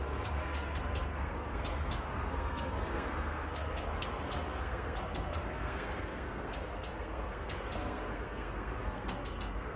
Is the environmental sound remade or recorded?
remade